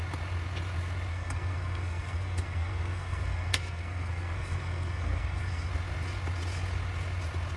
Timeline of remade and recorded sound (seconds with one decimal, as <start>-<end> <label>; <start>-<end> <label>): 0.0-1.1 recorded; 1.1-5.7 remade; 5.7-7.6 recorded